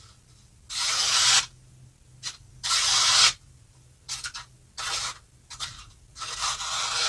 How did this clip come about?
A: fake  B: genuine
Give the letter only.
B